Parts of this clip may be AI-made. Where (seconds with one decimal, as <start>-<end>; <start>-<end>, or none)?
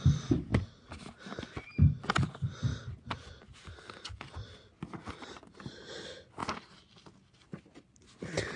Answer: none